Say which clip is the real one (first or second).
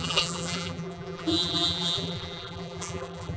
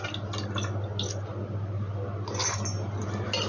second